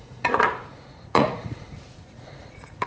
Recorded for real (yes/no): no